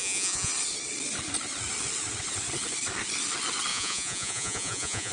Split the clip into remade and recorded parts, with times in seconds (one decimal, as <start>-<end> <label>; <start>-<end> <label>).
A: 0.0-0.5 remade; 0.5-3.7 recorded; 3.7-5.1 remade